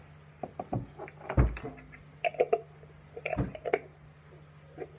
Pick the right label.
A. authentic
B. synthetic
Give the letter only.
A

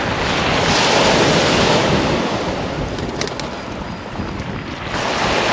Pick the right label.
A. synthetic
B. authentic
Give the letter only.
B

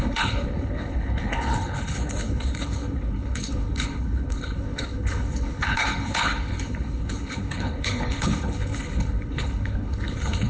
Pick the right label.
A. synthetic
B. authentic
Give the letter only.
A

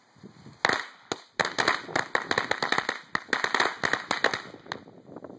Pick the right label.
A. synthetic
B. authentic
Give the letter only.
B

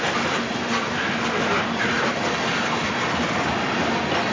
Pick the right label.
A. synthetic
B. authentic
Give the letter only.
B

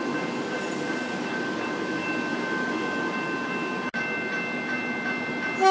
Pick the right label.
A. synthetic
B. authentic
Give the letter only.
B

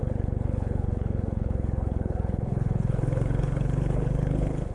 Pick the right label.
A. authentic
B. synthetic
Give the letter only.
B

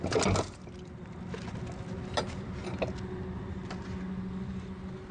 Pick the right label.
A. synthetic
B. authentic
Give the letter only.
B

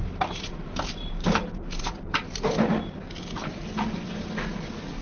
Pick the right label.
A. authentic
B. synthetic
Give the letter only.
A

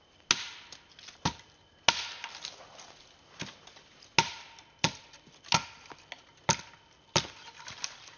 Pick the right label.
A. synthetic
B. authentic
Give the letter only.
B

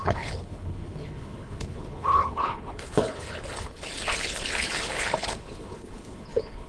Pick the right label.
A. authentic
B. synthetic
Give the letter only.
B